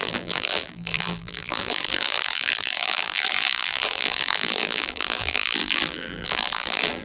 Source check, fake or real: fake